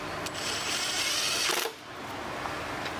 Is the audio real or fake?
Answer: real